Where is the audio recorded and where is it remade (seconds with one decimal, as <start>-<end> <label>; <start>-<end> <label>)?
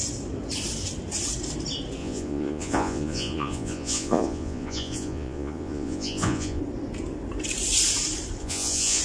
0.0-2.0 recorded; 2.0-6.6 remade; 6.6-8.4 recorded; 8.4-9.0 remade